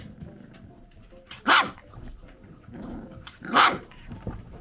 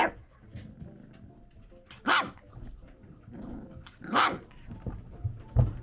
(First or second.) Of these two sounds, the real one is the second